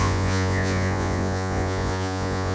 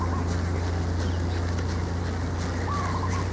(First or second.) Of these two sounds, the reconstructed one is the first